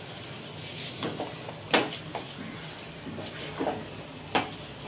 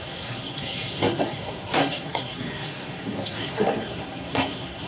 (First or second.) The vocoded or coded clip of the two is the second